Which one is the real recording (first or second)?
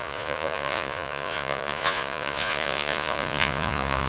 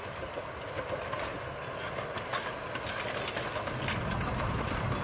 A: second